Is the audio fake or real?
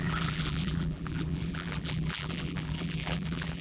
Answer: fake